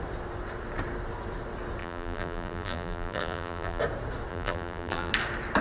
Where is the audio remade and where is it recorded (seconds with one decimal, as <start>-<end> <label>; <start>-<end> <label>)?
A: 0.0-1.8 recorded; 1.8-3.8 remade; 3.8-4.3 recorded; 4.3-5.1 remade; 5.1-5.6 recorded